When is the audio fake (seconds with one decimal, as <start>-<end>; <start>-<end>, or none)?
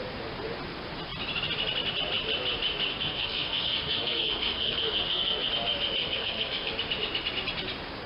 2.9-5.5; 6.0-6.7